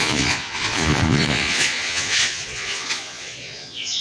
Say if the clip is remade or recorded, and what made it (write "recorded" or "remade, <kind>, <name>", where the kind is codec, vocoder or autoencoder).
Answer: remade, vocoder, Vocos